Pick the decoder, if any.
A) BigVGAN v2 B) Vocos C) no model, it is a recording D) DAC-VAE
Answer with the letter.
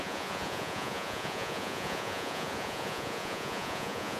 B